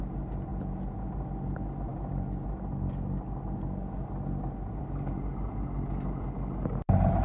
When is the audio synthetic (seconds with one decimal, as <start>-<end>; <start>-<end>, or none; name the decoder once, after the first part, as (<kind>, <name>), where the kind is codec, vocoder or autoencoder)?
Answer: 0.5-1.1 (vocoder, Vocos)